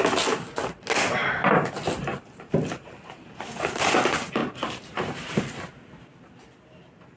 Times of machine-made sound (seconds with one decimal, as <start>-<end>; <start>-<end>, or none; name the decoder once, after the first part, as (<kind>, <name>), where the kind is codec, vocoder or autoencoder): 1.2-1.7 (vocoder, BigVGAN v2); 2.1-3.9; 4.4-5.4